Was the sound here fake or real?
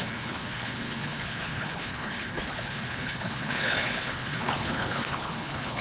fake